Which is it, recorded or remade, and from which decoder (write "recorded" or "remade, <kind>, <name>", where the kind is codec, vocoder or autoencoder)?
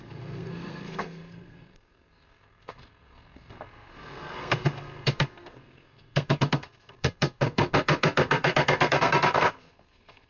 remade, codec, SNAC